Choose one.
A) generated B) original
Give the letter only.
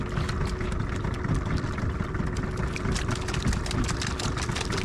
B